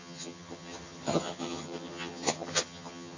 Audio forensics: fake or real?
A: fake